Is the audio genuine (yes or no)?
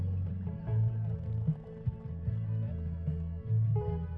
yes